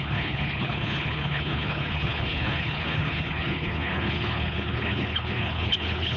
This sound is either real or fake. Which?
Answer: fake